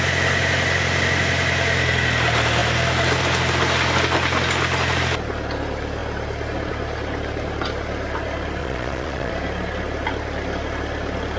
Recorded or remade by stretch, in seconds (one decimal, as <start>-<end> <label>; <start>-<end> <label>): 0.0-8.6 recorded; 8.6-9.3 remade; 9.3-11.4 recorded